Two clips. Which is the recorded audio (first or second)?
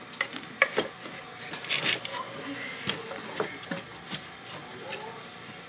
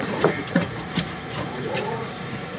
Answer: first